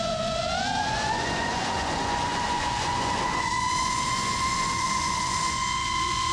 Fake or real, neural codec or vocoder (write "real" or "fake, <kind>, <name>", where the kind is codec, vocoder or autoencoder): fake, vocoder, Vocos